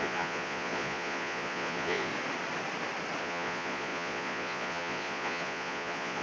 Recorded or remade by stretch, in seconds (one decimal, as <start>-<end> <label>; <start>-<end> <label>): 0.0-2.1 remade; 2.1-3.2 recorded; 3.2-6.2 remade